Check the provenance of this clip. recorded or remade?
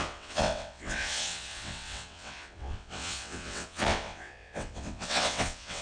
remade